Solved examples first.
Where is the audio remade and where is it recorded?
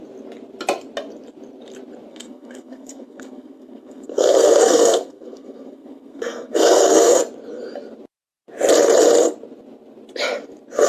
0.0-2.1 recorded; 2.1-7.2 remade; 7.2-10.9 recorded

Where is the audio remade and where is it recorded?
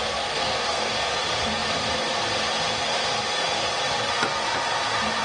0.0-0.9 remade; 0.9-5.2 recorded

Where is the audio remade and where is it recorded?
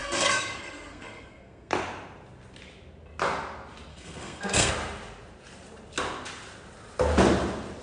0.0-1.7 remade; 1.7-3.9 recorded; 3.9-4.7 remade; 4.7-7.8 recorded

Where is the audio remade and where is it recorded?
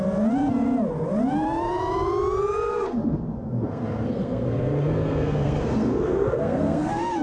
0.0-2.7 recorded; 2.7-7.2 remade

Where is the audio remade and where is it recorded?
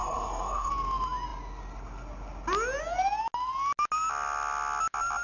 0.0-0.7 remade; 0.7-5.2 recorded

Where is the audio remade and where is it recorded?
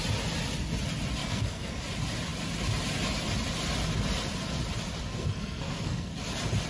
0.0-1.2 recorded; 1.2-1.8 remade; 1.8-5.1 recorded; 5.1-6.1 remade; 6.1-6.7 recorded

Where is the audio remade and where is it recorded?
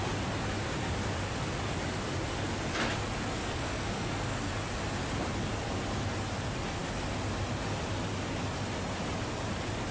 0.0-3.4 recorded; 3.4-4.5 remade; 4.5-9.9 recorded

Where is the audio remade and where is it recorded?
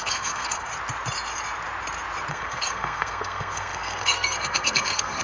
0.0-0.7 remade; 0.7-2.3 recorded; 2.3-5.2 remade